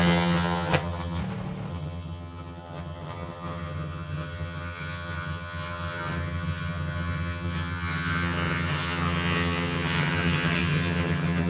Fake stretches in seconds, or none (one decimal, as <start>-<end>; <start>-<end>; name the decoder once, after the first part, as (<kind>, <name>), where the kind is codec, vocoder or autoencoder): 0.0-1.2 (vocoder, HiFi-GAN); 1.7-11.5